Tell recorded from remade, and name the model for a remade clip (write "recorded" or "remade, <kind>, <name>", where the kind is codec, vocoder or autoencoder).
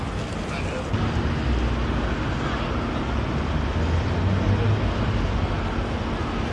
recorded